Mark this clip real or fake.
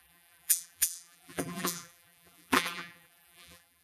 fake